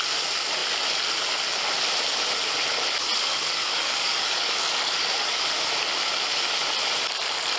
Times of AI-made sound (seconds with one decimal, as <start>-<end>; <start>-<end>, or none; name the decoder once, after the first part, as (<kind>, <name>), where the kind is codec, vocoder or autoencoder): 3.3-5.4 (codec, DAC)

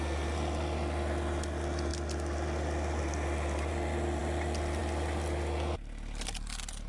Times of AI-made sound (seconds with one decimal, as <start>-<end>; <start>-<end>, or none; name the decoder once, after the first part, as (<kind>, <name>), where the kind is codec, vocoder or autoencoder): none

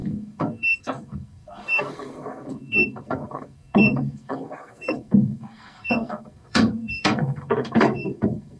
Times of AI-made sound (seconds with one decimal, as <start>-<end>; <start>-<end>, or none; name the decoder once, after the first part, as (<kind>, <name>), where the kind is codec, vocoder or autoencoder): 0.0-8.6 (codec, SNAC)

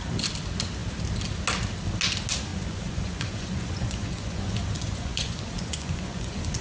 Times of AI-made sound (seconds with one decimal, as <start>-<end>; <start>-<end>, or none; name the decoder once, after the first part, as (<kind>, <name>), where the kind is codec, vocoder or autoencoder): 2.5-6.6 (vocoder, Vocos)

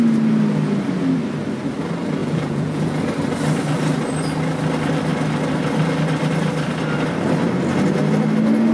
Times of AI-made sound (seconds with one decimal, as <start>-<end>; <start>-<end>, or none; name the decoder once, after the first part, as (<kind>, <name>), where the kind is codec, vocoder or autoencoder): 2.2-3.0 (vocoder, Vocos)

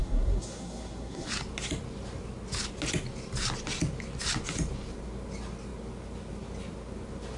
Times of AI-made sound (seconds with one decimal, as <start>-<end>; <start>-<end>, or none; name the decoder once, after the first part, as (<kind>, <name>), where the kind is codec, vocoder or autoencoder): 0.0-1.3 (codec, SNAC)

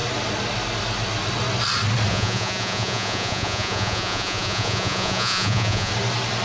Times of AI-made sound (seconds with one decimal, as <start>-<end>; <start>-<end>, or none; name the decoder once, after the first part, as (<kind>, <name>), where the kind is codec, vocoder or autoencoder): 2.1-5.9 (vocoder, Vocos)

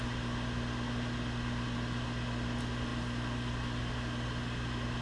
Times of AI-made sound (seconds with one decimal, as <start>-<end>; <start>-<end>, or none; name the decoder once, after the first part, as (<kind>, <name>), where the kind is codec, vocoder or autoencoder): 2.9-3.8 (vocoder, BigVGAN v2)